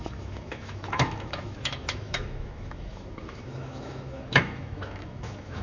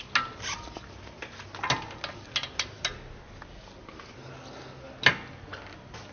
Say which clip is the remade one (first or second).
first